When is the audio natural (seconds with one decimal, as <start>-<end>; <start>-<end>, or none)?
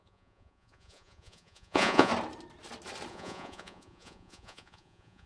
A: 2.1-3.1